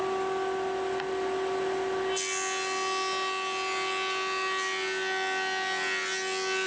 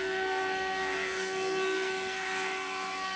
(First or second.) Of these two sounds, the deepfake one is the second